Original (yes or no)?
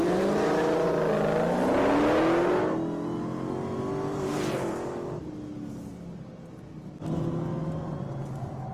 yes